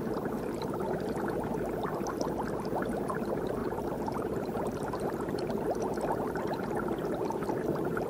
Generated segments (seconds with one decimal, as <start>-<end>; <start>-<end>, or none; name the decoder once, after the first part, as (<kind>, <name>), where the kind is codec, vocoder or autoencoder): 3.6-4.6 (vocoder, BigVGAN v2)